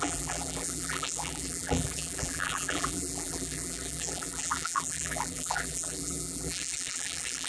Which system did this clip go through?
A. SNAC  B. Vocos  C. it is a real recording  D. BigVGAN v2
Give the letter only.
D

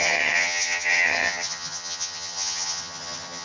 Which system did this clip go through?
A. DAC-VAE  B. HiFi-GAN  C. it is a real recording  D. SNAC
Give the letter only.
B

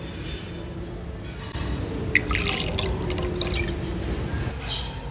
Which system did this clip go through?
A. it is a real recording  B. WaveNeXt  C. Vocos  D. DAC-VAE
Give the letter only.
A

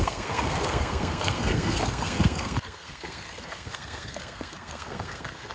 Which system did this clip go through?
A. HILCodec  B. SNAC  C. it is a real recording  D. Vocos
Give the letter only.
B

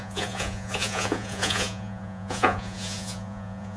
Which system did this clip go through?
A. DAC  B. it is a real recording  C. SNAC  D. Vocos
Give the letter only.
D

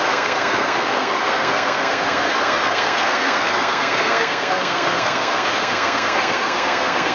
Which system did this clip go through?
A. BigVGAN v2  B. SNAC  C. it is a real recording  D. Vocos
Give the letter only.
B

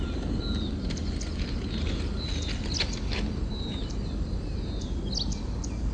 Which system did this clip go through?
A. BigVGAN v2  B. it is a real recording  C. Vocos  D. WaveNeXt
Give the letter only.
B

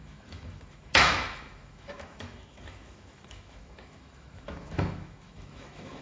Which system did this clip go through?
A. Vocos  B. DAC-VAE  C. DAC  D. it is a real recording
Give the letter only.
B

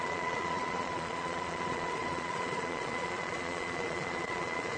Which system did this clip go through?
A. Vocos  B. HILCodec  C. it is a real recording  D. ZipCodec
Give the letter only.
A